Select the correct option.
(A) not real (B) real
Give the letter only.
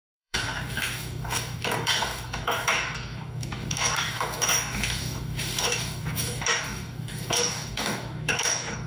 A